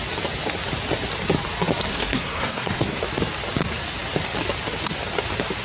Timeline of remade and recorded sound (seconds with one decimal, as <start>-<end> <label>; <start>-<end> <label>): 0.0-1.9 recorded; 1.9-3.0 remade; 3.0-5.6 recorded